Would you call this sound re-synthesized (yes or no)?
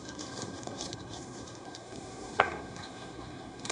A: yes